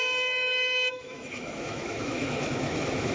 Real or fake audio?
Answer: fake